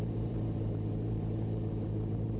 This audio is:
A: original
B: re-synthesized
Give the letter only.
B